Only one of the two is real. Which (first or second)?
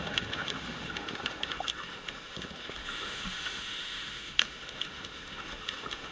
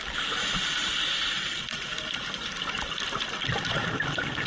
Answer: second